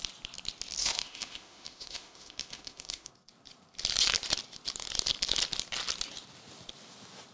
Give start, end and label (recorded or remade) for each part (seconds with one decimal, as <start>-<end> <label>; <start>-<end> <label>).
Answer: 0.0-0.8 recorded; 0.8-3.1 remade; 3.1-7.3 recorded